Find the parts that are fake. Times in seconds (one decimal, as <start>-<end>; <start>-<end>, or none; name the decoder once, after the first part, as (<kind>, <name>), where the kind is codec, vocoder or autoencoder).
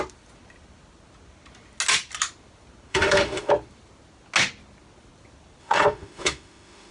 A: 2.9-3.5 (autoencoder, DAC-VAE); 5.6-6.9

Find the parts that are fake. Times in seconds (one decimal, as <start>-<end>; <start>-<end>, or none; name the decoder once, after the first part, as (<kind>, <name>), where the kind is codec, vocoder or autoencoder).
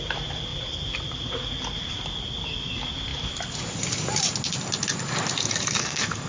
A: 5.8-6.3 (codec, SNAC)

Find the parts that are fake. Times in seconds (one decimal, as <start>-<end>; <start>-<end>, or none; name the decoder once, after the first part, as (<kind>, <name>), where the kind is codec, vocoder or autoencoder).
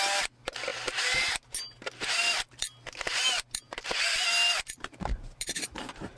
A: none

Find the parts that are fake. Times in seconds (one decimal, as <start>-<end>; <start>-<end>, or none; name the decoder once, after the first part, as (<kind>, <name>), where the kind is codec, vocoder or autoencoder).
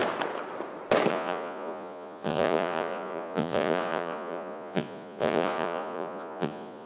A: 1.1-6.9 (vocoder, Vocos)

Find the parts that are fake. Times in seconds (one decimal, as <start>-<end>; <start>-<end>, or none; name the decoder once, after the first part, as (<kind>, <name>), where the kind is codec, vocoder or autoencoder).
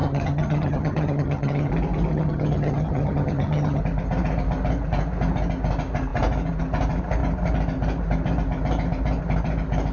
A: 0.0-1.7 (vocoder, HiFi-GAN); 2.1-3.8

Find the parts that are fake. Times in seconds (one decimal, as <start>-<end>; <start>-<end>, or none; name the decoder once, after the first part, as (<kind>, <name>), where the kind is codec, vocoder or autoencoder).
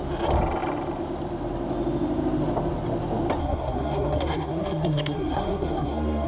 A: 3.4-6.3 (codec, SNAC)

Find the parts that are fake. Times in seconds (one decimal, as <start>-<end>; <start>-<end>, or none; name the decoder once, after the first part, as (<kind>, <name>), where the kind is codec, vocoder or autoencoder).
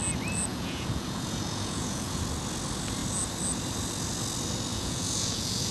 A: 0.5-2.2 (vocoder, Vocos); 4.7-5.7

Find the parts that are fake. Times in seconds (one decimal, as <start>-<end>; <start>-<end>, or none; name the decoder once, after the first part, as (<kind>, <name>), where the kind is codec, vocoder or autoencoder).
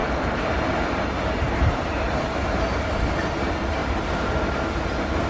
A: 0.0-3.2 (vocoder, BigVGAN v2); 3.8-4.3